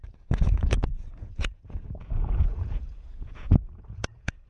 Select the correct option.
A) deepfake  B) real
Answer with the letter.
A